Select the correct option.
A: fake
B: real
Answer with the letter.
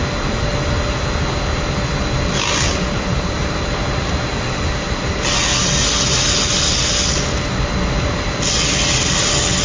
B